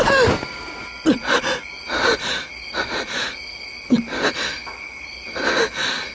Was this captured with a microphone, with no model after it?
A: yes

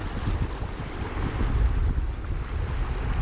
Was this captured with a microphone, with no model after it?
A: yes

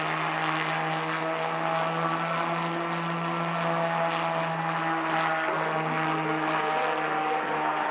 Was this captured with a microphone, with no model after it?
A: yes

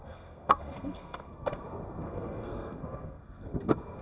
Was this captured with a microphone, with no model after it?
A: no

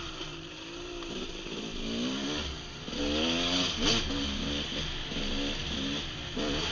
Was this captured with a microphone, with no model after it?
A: yes